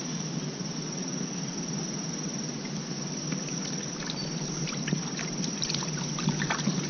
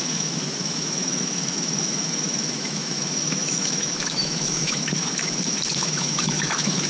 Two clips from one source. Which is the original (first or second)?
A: first